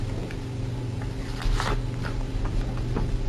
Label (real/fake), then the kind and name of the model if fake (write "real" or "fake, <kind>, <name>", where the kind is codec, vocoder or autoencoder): real